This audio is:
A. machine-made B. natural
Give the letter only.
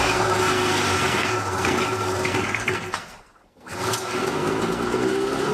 A